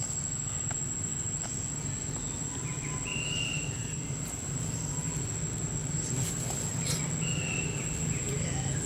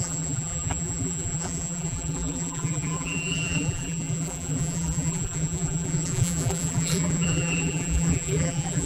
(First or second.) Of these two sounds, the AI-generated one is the second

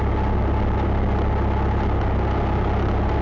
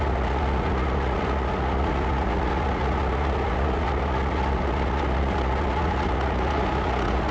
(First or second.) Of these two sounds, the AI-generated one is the second